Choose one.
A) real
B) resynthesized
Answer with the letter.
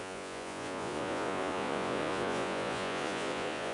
B